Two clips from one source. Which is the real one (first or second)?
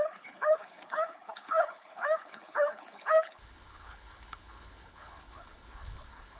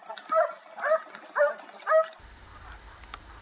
second